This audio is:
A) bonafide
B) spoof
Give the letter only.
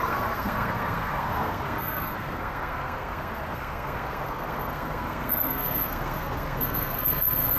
B